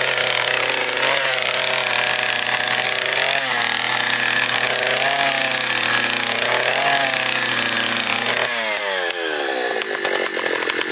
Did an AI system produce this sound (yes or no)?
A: no